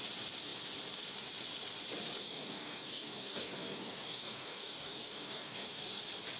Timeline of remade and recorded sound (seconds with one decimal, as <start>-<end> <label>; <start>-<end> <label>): 0.0-2.2 recorded; 2.2-6.0 remade; 6.0-6.4 recorded